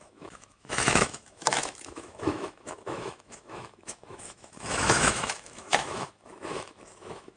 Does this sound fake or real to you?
fake